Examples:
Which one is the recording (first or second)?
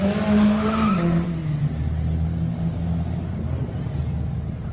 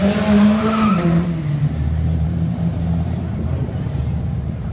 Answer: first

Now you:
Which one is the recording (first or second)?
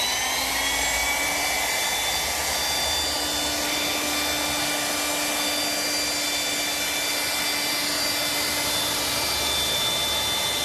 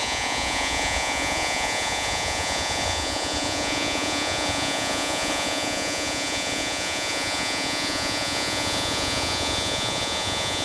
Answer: first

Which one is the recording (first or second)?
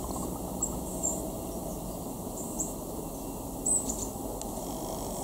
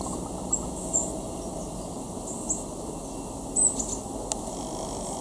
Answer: second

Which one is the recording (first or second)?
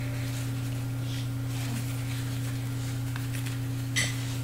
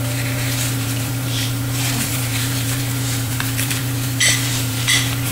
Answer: first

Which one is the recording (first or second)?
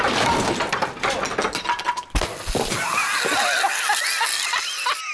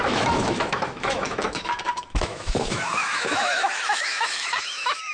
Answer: first